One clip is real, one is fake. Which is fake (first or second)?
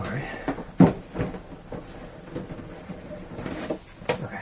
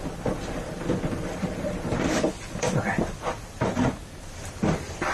second